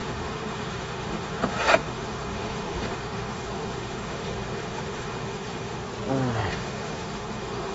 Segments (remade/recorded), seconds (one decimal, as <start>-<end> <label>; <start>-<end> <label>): 0.0-5.8 remade; 5.8-6.5 recorded; 6.5-7.7 remade